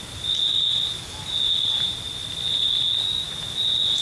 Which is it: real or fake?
real